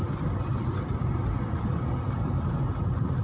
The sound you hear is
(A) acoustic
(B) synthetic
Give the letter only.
A